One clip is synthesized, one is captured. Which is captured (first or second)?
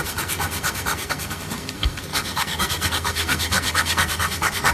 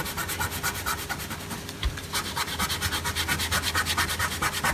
second